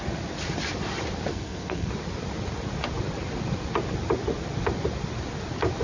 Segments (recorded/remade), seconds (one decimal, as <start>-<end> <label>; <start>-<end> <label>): 0.0-1.3 recorded; 1.3-1.9 remade; 1.9-5.8 recorded